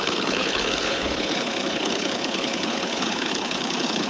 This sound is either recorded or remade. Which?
remade